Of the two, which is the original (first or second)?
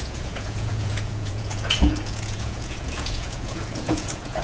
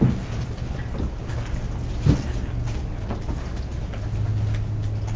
second